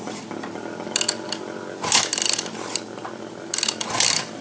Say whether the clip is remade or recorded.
recorded